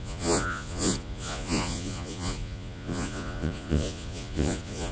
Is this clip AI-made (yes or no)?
yes